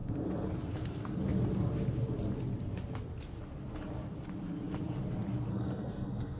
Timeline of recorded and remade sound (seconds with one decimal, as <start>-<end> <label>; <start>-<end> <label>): 0.0-5.5 recorded; 5.5-6.4 remade